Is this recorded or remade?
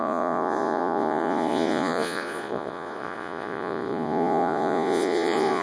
remade